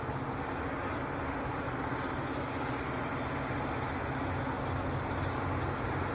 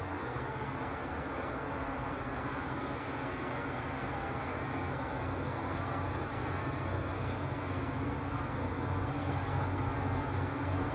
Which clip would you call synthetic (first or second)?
second